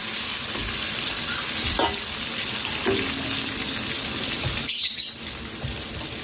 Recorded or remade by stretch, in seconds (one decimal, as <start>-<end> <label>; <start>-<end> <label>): 0.0-6.2 recorded